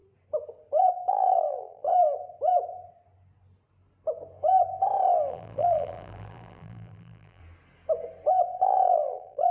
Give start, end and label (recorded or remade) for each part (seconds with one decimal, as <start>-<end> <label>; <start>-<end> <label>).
0.0-0.8 recorded; 0.8-1.9 remade; 1.9-5.3 recorded; 5.3-7.4 remade; 7.4-8.3 recorded; 8.3-9.5 remade